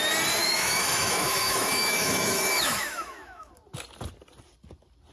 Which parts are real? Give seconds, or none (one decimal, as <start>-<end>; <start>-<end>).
0.0-0.4; 3.5-5.1